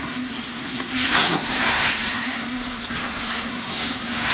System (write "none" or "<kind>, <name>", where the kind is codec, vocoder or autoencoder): codec, SNAC